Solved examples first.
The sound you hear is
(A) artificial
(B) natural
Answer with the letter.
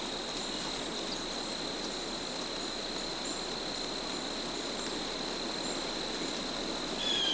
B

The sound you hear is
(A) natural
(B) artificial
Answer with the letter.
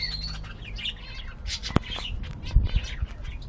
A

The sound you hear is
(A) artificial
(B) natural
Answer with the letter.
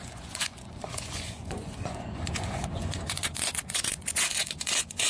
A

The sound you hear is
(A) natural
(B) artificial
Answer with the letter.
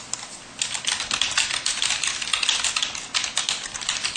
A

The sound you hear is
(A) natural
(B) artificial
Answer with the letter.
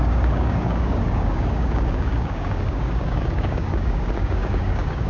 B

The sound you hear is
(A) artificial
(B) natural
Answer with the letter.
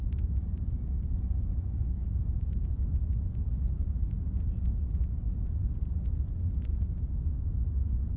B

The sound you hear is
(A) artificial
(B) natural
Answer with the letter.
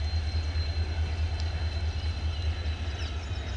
B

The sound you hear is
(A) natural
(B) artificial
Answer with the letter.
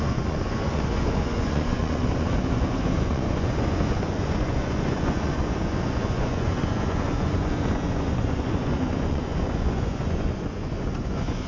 B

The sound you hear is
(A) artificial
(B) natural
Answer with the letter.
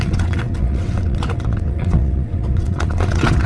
A